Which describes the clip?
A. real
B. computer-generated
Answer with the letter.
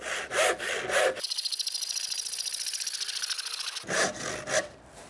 A